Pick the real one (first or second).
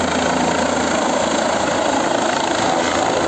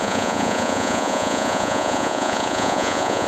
first